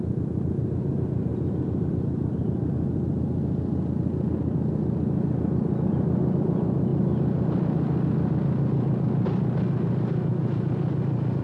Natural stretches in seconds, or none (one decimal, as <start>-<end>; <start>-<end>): 0.0-11.4